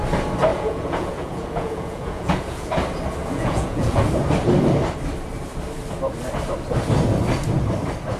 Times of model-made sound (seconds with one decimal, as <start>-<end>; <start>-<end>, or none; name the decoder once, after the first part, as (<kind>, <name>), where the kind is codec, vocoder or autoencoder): 0.5-2.7 (vocoder, Vocos); 3.2-4.0